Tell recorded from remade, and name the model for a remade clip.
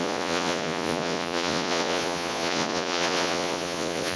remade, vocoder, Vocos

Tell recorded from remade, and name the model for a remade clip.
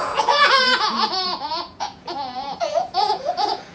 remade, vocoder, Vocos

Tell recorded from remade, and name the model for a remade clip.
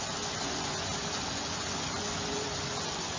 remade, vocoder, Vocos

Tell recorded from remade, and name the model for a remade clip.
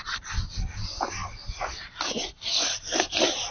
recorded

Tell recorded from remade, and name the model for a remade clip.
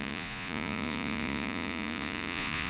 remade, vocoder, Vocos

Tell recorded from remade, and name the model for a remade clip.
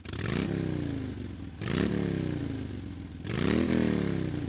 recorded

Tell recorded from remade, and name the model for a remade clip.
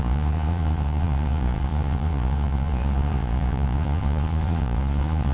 remade, vocoder, Vocos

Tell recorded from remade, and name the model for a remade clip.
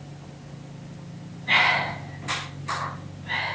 recorded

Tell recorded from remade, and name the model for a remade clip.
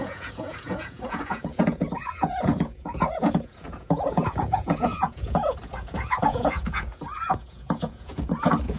remade, vocoder, Vocos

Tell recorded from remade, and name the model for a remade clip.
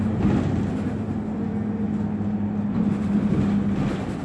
recorded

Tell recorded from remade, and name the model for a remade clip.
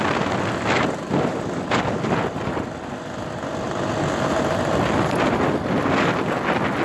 recorded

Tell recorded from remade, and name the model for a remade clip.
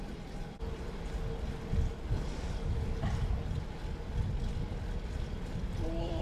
recorded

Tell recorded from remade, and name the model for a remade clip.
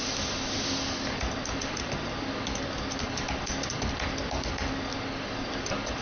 recorded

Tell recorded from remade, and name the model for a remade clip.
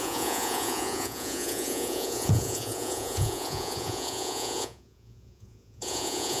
remade, vocoder, Vocos